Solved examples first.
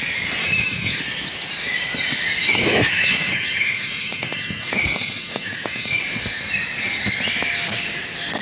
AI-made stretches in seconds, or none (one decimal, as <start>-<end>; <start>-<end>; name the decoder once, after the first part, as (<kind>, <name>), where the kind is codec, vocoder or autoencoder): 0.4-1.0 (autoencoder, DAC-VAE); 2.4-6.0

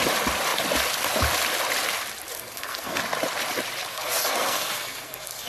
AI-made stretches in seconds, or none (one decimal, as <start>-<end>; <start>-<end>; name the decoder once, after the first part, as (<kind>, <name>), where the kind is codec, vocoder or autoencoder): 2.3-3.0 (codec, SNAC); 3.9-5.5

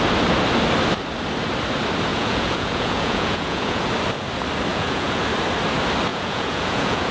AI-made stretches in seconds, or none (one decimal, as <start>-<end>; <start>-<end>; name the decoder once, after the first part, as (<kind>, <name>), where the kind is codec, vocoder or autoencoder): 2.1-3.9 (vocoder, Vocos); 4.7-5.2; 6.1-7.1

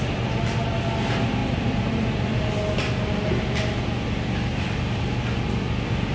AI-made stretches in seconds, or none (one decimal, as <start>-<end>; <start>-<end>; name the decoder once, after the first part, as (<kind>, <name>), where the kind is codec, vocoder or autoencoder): none

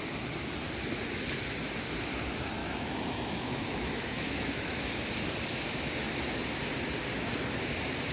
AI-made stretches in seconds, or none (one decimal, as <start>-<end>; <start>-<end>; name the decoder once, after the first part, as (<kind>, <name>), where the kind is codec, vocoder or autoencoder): 2.6-4.8 (autoencoder, DAC-VAE)